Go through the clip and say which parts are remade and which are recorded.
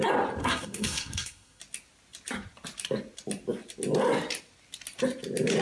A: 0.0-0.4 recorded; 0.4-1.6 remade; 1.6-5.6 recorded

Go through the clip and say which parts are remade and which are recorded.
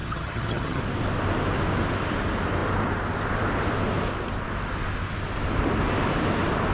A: 0.0-0.8 remade; 0.8-6.7 recorded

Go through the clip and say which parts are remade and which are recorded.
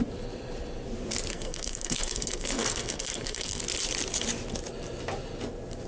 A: 0.0-1.3 recorded; 1.3-3.6 remade; 3.6-5.9 recorded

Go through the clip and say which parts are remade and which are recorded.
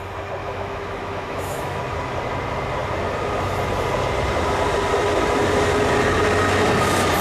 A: 0.0-0.4 recorded; 0.4-1.8 remade; 1.8-7.2 recorded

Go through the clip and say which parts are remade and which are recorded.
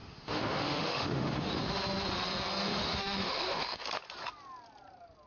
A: 0.0-1.5 remade; 1.5-2.6 recorded; 2.6-3.9 remade; 3.9-5.3 recorded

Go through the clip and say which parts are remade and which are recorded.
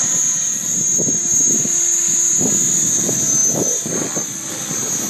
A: 0.0-5.1 recorded